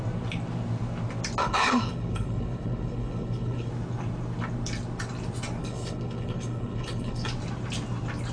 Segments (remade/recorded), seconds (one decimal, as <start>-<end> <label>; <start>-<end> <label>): 0.0-1.4 recorded; 1.4-3.7 remade; 3.7-5.6 recorded; 5.6-7.3 remade; 7.3-8.3 recorded